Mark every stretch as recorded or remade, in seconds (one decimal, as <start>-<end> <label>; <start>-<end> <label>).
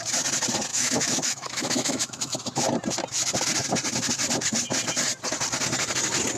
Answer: 0.0-0.7 recorded; 0.7-2.4 remade; 2.4-6.4 recorded